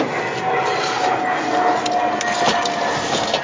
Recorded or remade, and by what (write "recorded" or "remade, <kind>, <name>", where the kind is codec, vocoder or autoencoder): recorded